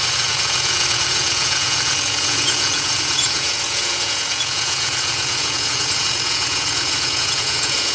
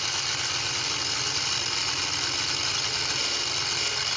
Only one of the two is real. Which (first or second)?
second